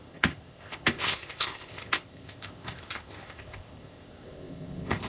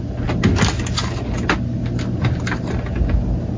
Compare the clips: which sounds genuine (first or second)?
second